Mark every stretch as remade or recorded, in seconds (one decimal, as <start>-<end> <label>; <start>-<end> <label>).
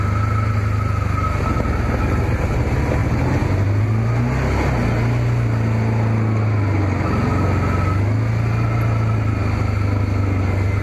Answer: 0.0-10.8 recorded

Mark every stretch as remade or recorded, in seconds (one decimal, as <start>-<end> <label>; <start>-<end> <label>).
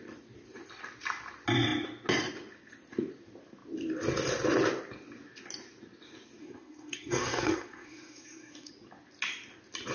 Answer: 0.0-6.4 recorded; 6.4-8.7 remade; 8.7-9.9 recorded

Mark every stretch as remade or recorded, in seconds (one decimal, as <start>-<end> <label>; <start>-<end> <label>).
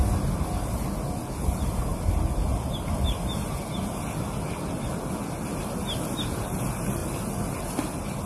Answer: 0.0-8.3 recorded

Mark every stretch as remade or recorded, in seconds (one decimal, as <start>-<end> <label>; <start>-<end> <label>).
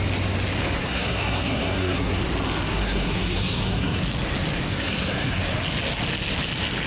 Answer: 0.0-0.8 recorded; 0.8-2.2 remade; 2.2-2.7 recorded; 2.7-4.0 remade; 4.0-4.7 recorded; 4.7-5.4 remade; 5.4-6.9 recorded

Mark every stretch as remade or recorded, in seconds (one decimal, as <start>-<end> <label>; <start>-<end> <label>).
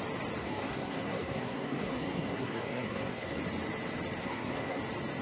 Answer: 0.0-0.4 recorded; 0.4-3.4 remade; 3.4-4.2 recorded; 4.2-4.8 remade; 4.8-5.2 recorded